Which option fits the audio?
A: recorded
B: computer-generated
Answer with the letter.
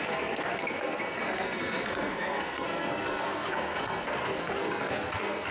B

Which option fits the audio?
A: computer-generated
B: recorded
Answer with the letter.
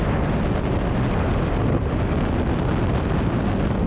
B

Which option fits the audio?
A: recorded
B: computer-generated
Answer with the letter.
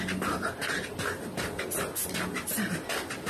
A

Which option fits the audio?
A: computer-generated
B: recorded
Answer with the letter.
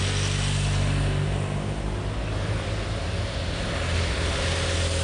B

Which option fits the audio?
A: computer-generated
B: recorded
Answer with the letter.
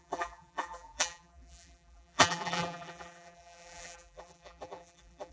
A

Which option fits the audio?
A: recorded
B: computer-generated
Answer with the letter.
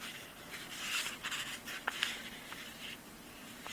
A